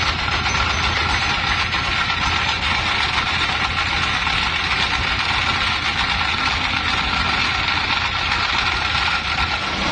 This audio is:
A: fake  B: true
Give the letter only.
B